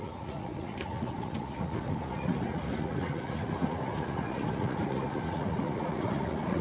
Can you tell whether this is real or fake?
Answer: fake